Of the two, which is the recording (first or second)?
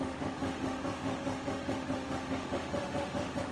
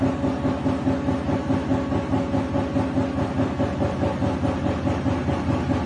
second